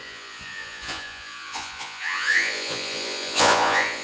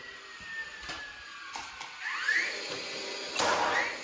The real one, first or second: second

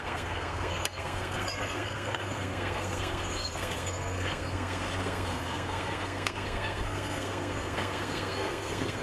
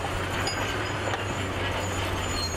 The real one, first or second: second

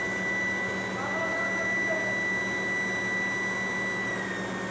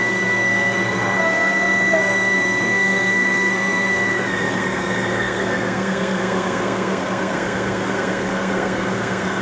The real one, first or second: first